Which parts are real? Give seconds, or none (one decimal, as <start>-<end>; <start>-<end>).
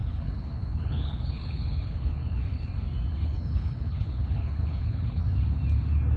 2.7-3.2; 5.2-6.2